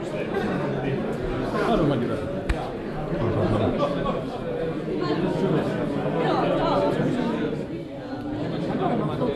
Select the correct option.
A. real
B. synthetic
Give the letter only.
A